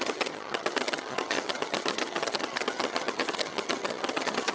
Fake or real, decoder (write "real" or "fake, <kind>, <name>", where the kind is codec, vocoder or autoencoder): fake, vocoder, HiFi-GAN